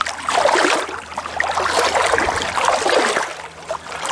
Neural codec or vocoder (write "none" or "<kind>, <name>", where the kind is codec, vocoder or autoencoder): none